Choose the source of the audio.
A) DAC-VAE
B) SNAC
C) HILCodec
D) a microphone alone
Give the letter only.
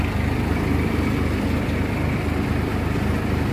D